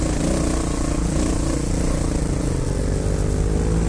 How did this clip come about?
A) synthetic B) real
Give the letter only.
B